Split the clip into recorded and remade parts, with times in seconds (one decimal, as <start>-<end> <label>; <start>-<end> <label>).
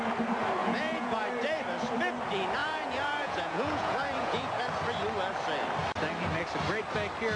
0.0-0.6 recorded; 0.6-1.2 remade; 1.2-2.6 recorded; 2.6-4.6 remade; 4.6-7.4 recorded